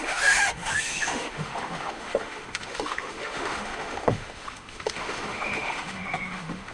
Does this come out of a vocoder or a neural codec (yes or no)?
yes